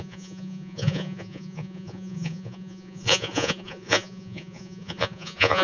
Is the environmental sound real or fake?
fake